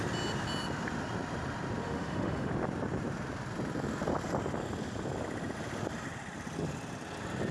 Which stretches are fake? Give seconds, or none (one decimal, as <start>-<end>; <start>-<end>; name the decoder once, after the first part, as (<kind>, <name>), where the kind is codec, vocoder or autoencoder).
1.8-2.5 (autoencoder, DAC-VAE)